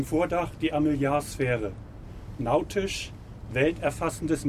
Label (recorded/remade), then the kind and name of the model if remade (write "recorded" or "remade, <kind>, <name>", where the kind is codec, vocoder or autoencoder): remade, vocoder, BigVGAN v2